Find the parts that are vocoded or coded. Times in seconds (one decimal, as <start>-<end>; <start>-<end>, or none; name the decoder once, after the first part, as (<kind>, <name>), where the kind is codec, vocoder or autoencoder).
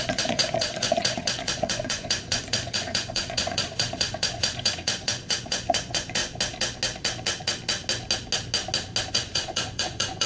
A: 0.0-6.2 (vocoder, Vocos); 9.1-10.3